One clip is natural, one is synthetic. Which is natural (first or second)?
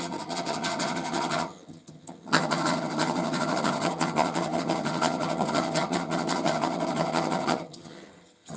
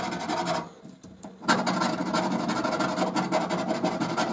second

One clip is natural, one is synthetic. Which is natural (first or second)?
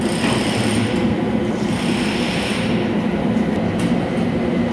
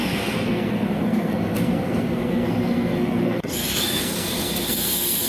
first